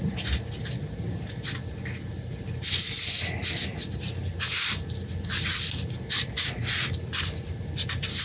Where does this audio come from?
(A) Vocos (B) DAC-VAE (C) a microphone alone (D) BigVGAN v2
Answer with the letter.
C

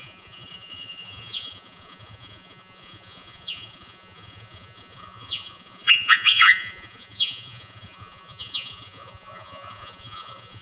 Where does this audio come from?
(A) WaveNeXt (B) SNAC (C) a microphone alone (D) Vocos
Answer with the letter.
D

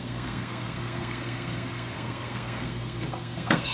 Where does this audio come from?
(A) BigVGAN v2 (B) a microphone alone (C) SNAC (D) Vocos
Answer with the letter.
C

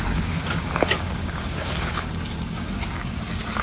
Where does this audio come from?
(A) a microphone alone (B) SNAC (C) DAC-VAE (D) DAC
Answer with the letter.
D